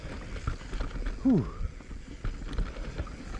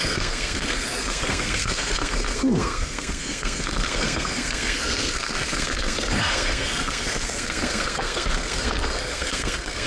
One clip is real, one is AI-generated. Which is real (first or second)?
first